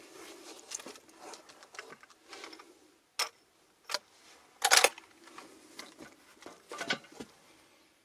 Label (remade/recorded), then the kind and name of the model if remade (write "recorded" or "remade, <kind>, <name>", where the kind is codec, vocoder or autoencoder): recorded